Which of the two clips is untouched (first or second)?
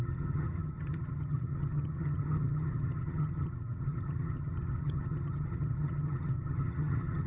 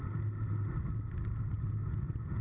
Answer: second